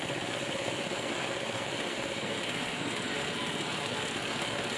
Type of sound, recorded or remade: remade